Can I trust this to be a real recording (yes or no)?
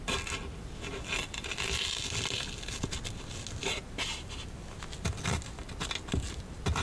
yes